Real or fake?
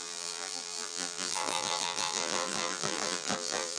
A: fake